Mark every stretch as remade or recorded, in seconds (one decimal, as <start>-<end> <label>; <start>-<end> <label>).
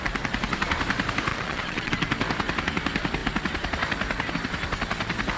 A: 0.0-1.3 recorded; 1.3-1.9 remade; 1.9-5.4 recorded